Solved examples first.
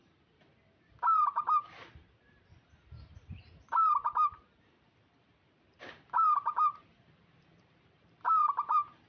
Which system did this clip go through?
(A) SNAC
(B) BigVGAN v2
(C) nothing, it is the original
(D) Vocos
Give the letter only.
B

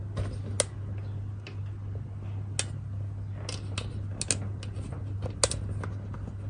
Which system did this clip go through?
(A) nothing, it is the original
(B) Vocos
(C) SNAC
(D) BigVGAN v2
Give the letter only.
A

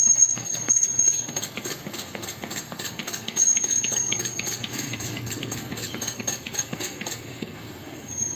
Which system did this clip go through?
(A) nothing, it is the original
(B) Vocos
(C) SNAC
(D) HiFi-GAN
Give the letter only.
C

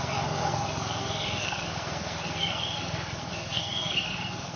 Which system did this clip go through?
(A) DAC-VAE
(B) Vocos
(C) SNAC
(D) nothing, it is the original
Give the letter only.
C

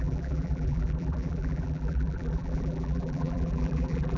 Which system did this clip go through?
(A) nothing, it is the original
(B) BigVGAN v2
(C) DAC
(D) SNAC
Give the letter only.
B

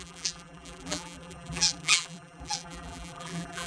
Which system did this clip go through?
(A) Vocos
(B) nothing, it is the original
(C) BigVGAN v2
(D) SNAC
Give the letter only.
C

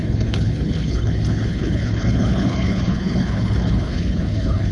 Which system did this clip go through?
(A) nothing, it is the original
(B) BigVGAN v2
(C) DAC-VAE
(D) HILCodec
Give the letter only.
D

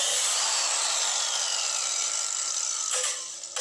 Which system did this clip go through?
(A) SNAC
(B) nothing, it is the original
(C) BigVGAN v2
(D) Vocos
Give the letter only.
B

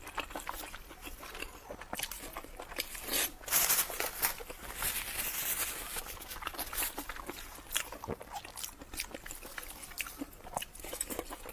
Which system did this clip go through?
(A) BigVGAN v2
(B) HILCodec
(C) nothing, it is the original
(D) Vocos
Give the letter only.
C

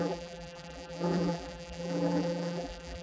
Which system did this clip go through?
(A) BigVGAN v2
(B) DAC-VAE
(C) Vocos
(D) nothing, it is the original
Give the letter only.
A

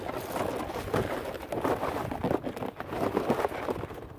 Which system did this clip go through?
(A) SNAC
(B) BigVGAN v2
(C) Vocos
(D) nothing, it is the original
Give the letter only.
D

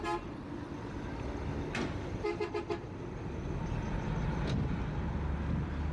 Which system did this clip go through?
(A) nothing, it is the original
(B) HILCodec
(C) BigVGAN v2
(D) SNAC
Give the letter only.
A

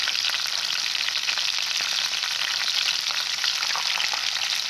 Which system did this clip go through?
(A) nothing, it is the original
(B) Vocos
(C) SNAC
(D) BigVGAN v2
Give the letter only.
A